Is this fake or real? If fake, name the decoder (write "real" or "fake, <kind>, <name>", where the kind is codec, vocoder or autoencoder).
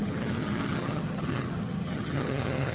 fake, vocoder, HiFi-GAN